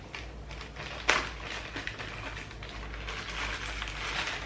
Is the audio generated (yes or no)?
no